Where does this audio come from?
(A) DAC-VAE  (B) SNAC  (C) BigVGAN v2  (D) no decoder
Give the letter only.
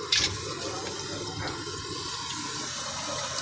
D